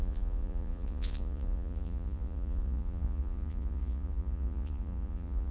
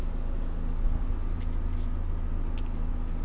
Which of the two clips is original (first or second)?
second